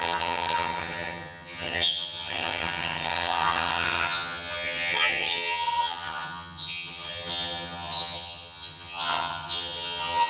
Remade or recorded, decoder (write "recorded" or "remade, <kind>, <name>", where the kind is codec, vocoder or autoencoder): remade, vocoder, HiFi-GAN